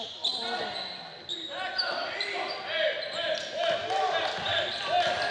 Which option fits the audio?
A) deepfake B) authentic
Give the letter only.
B